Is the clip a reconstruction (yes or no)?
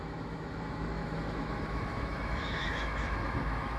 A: yes